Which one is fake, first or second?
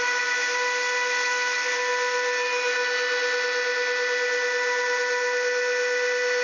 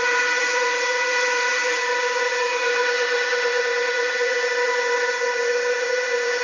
second